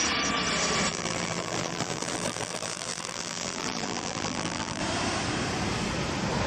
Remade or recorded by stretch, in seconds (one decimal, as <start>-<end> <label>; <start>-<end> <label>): 0.0-0.9 recorded; 0.9-4.8 remade; 4.8-6.5 recorded